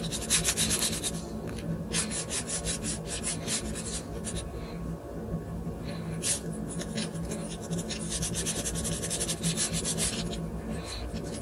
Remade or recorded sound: recorded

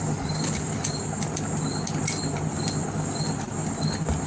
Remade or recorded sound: recorded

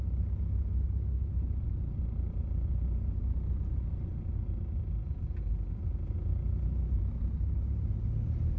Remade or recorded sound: recorded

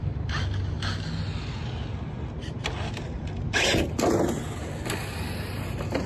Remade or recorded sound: recorded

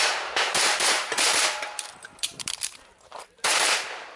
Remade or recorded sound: remade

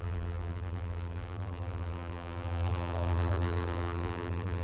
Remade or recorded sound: remade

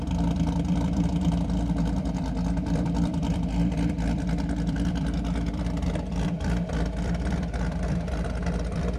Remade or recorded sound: remade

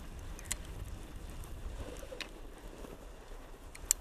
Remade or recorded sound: recorded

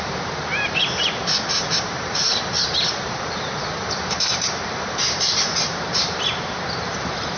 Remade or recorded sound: remade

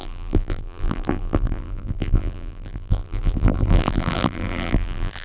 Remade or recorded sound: remade